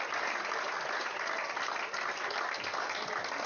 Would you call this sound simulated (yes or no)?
no